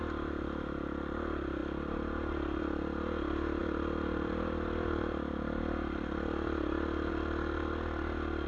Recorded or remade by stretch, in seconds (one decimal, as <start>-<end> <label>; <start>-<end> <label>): 0.0-3.6 recorded; 3.6-7.1 remade; 7.1-8.5 recorded